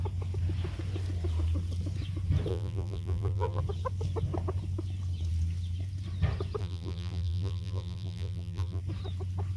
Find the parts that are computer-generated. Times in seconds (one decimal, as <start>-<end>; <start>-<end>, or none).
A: 2.5-3.6; 6.6-8.8